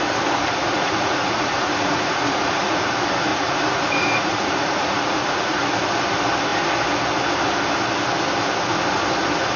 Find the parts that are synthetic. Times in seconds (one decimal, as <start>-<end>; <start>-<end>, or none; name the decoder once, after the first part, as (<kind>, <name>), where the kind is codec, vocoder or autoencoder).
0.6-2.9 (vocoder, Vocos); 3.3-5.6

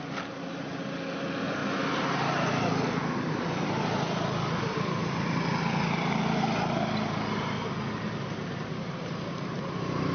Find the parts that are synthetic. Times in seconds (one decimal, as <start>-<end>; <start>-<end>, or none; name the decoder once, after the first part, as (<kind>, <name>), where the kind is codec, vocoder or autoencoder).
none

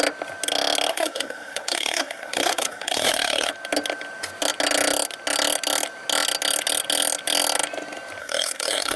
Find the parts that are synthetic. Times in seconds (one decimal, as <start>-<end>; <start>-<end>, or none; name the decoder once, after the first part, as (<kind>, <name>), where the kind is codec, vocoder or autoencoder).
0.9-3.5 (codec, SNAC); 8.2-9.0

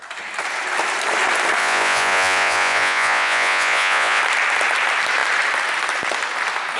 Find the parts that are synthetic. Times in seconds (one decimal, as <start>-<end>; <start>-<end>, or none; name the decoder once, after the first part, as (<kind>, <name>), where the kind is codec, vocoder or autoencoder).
1.6-4.2 (vocoder, Vocos)

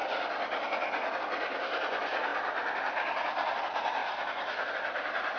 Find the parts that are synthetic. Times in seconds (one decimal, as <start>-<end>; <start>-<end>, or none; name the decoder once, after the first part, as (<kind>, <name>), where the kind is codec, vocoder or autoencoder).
none

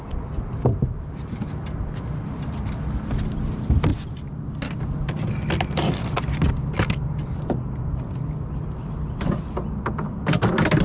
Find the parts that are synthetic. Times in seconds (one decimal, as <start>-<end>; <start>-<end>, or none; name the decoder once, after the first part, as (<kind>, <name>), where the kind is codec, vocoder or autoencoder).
none

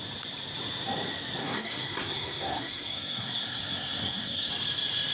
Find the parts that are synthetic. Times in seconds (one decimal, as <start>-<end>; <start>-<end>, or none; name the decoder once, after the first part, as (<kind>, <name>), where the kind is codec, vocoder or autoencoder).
1.4-4.5 (codec, SNAC)